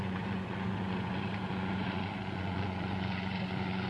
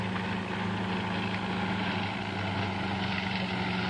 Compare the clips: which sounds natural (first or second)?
second